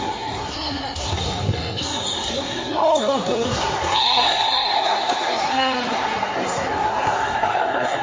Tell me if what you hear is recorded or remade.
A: remade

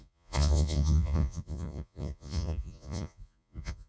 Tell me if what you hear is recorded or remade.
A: remade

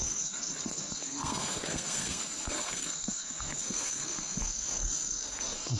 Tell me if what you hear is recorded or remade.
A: remade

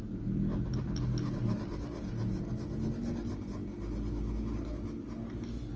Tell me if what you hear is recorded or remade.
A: recorded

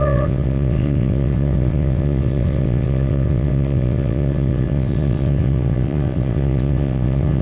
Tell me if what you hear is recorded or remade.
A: remade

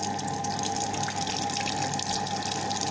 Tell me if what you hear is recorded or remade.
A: recorded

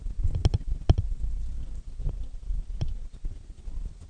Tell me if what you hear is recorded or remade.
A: recorded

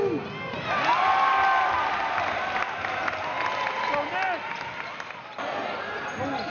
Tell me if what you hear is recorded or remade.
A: recorded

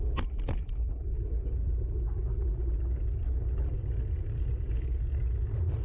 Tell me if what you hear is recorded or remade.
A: recorded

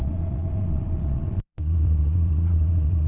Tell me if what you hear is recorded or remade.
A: remade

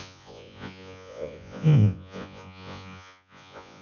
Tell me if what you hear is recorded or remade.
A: remade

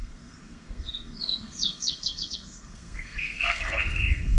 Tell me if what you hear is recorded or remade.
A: remade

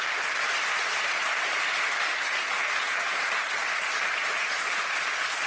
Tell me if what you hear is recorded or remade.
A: recorded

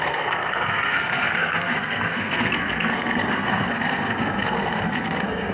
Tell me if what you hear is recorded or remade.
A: remade